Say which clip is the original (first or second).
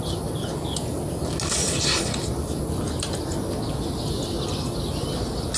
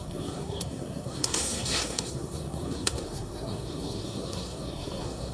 first